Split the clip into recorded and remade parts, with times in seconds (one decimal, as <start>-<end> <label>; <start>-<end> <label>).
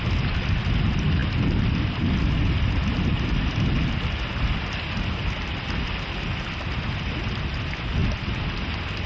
0.0-9.1 recorded